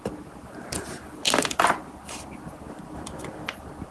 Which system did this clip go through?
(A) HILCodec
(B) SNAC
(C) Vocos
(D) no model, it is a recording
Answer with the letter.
D